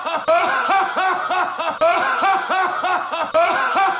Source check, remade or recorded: recorded